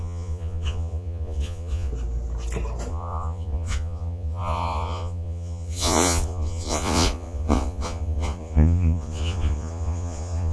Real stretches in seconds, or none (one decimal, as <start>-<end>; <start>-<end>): 1.9-2.9